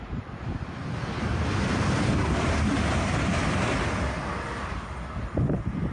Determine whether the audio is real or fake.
real